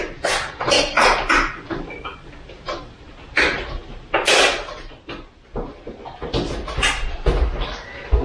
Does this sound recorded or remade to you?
recorded